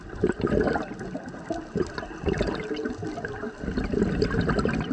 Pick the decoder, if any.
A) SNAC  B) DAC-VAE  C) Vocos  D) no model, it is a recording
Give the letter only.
D